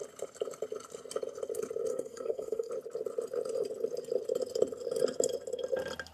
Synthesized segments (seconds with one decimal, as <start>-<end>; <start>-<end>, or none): 1.9-2.7